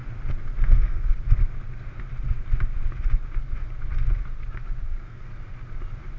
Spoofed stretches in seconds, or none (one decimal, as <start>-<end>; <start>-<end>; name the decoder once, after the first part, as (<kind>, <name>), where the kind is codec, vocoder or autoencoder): 0.6-1.1 (codec, SNAC); 4.8-5.2